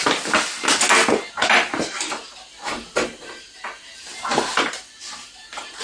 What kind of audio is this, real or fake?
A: real